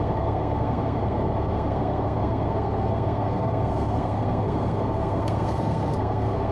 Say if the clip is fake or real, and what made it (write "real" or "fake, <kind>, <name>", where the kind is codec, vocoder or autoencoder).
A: fake, codec, SNAC